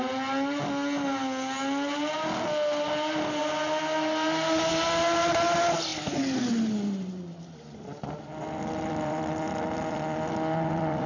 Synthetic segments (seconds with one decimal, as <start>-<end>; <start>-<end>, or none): 5.9-11.1